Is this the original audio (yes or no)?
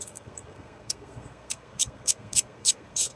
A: no